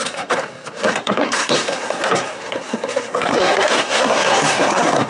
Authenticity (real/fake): fake